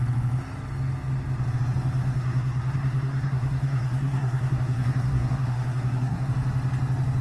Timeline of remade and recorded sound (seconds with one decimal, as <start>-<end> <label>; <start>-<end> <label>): 0.0-2.0 recorded; 2.0-6.3 remade; 6.3-7.2 recorded